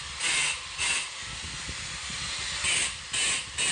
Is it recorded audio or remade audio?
recorded